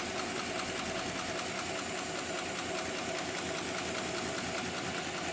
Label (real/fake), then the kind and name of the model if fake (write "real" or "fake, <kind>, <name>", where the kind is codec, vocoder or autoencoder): real